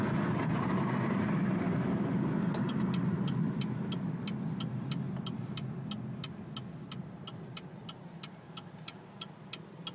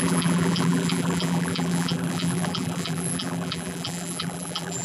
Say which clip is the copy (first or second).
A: second